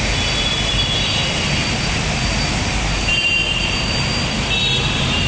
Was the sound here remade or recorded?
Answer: recorded